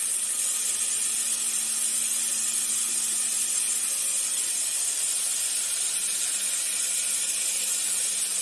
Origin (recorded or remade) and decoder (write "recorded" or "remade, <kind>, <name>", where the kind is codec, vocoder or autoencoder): recorded